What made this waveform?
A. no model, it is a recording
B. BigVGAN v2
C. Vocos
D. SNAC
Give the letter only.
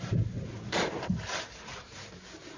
B